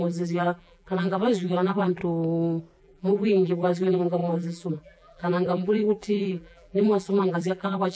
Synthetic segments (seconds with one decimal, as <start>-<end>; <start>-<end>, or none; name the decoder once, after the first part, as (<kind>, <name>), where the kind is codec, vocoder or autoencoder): 0.0-2.0 (vocoder, BigVGAN v2); 2.8-8.0